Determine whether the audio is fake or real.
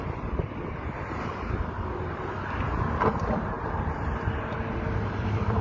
fake